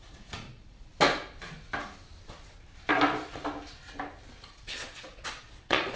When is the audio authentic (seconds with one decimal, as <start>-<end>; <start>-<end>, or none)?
0.9-4.5